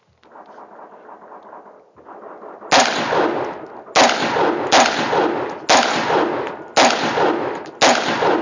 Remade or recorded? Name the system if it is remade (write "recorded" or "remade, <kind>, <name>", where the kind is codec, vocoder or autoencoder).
recorded